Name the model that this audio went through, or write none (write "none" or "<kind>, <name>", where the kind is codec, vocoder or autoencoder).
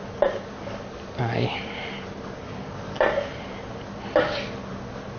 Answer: none